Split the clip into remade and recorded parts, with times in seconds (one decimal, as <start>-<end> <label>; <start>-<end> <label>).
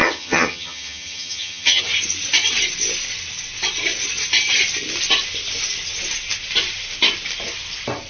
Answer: 0.0-1.8 remade; 1.8-8.1 recorded